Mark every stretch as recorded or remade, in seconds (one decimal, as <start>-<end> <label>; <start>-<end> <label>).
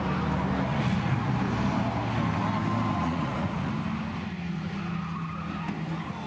0.0-0.7 recorded; 0.7-1.3 remade; 1.3-3.0 recorded; 3.0-3.7 remade; 3.7-6.3 recorded